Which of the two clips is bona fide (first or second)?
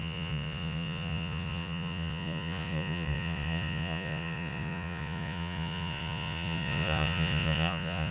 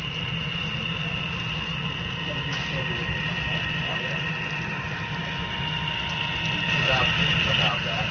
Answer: second